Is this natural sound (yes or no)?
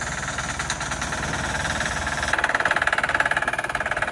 yes